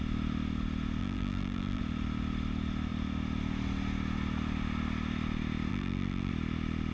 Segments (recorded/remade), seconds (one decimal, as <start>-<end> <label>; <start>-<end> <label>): 0.0-1.0 recorded; 1.0-1.8 remade; 1.8-5.7 recorded; 5.7-6.3 remade; 6.3-6.9 recorded